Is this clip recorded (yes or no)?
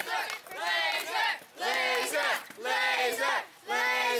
yes